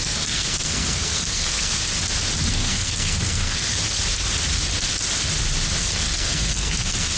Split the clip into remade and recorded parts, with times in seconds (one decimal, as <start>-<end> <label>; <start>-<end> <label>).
0.0-1.8 remade; 1.8-2.5 recorded; 2.5-3.8 remade; 3.8-5.8 recorded; 5.8-7.2 remade